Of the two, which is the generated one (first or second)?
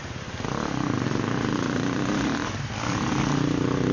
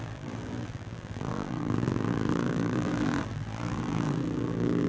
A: second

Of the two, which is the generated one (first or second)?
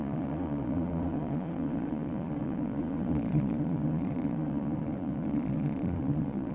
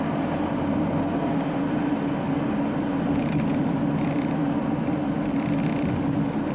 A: first